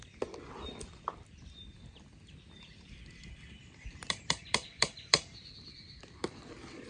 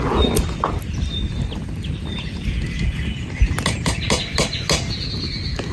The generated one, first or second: first